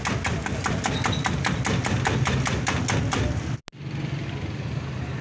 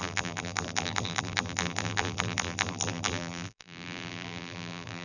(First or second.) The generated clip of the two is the second